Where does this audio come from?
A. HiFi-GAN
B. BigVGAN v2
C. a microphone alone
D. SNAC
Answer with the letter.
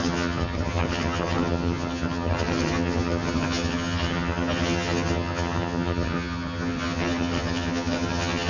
A